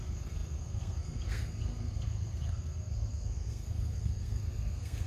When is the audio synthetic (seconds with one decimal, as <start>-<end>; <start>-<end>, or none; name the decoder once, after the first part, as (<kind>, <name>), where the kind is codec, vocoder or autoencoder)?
0.0-5.1 (codec, SNAC)